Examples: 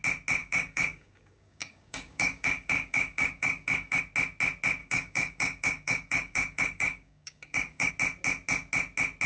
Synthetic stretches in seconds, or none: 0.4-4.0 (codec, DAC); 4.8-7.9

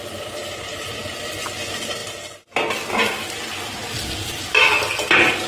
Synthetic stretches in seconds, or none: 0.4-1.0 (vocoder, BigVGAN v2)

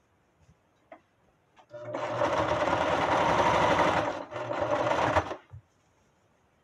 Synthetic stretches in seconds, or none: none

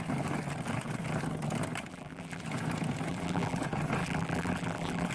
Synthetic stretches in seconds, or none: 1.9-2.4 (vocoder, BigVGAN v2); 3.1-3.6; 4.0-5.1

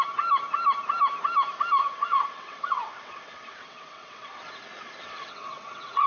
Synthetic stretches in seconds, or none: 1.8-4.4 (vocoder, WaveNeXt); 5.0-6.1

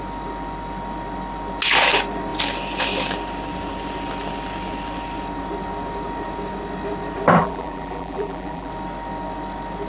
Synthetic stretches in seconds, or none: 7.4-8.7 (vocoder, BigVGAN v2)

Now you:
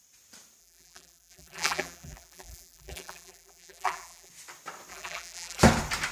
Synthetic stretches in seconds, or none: 0.6-4.3 (vocoder, BigVGAN v2); 4.9-5.6

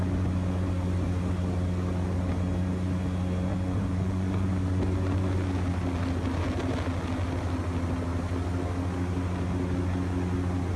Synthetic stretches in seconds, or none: 3.5-4.5 (vocoder, Vocos)